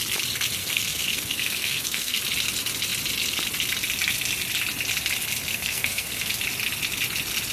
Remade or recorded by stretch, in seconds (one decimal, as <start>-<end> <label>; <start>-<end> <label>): 0.0-0.6 recorded; 0.6-2.2 remade; 2.2-5.5 recorded; 5.5-6.3 remade; 6.3-7.5 recorded